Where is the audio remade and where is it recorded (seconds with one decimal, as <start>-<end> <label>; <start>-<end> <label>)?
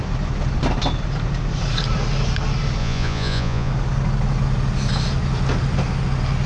0.0-2.8 recorded; 2.8-3.7 remade; 3.7-6.5 recorded